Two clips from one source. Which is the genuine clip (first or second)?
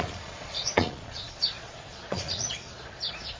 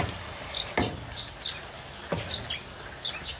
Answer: second